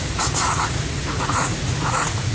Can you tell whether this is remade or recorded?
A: remade